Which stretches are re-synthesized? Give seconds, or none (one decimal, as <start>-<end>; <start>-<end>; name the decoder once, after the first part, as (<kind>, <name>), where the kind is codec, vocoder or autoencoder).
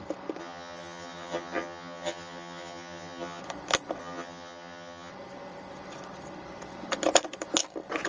0.4-3.4 (vocoder, HiFi-GAN); 4.0-5.1